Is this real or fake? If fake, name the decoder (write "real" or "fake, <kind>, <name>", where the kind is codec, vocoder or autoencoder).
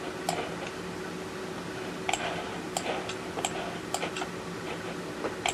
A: real